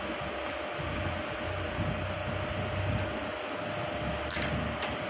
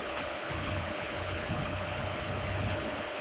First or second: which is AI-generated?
second